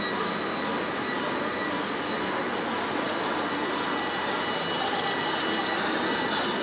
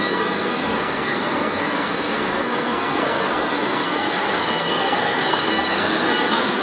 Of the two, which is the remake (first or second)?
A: second